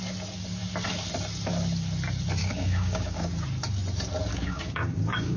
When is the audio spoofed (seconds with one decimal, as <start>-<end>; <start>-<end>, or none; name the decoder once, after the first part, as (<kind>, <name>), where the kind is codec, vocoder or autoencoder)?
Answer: 2.4-3.3 (codec, DAC); 4.3-5.4